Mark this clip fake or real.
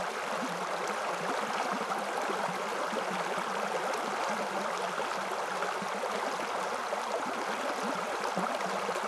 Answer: real